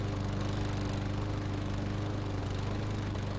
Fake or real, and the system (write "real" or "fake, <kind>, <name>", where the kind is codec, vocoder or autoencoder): real